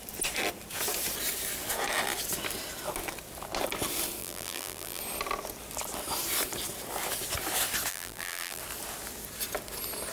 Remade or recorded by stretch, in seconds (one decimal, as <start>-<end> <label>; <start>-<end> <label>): 0.0-4.2 recorded; 4.2-5.0 remade; 5.0-7.9 recorded; 7.9-8.6 remade; 8.6-10.1 recorded